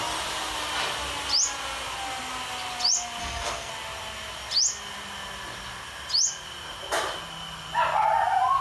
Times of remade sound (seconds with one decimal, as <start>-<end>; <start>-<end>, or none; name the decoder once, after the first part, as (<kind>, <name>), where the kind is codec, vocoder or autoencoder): 3.2-3.7 (codec, SNAC)

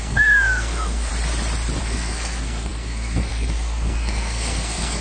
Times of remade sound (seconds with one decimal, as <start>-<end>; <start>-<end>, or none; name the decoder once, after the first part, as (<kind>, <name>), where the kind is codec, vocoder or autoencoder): 0.0-1.1 (codec, SNAC); 1.8-5.0

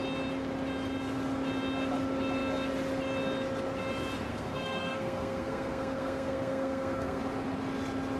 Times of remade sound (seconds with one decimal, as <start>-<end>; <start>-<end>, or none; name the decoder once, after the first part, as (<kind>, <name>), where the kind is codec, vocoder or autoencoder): 4.3-7.2 (codec, SNAC)

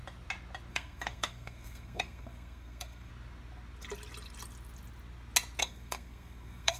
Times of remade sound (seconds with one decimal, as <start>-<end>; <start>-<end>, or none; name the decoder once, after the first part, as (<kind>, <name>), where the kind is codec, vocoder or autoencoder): 0.7-3.1 (codec, SNAC); 5.6-6.8

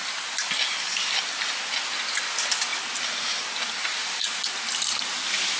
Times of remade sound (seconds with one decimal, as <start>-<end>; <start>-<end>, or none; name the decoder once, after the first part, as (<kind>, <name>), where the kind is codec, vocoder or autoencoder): none

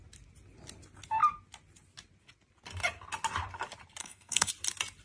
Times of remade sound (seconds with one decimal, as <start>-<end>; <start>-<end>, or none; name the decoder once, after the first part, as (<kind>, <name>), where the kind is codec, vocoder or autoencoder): 4.0-4.5 (codec, SNAC)

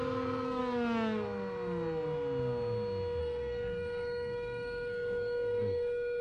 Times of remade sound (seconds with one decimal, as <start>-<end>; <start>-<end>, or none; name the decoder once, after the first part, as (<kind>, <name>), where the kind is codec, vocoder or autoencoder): 0.0-0.6 (codec, SNAC); 3.2-6.2

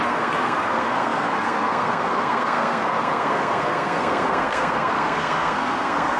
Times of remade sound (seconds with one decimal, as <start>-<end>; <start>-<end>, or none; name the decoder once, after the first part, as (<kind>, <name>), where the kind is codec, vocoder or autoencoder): 0.0-6.2 (codec, SNAC)